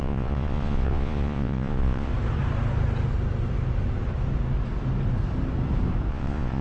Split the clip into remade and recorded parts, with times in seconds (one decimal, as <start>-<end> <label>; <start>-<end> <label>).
0.0-2.1 remade; 2.1-6.1 recorded; 6.1-6.6 remade